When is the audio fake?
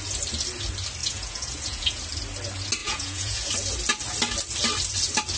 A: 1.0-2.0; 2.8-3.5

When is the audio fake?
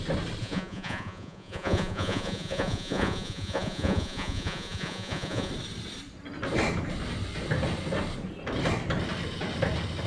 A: 0.4-5.5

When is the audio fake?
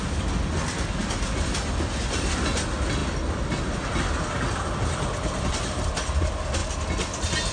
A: none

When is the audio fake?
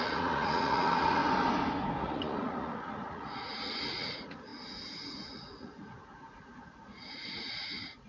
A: 0.0-1.2; 2.0-8.1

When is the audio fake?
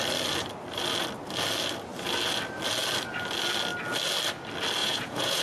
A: 4.8-5.4